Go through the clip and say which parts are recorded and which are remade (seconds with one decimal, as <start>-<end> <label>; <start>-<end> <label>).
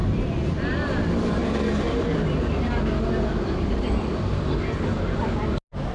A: 0.0-2.8 remade; 2.8-3.3 recorded; 3.3-4.6 remade; 4.6-5.9 recorded